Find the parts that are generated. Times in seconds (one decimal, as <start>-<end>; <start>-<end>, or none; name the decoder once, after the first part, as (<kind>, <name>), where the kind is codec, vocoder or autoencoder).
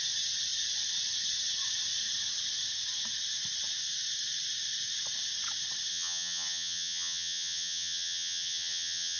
5.9-9.2 (vocoder, HiFi-GAN)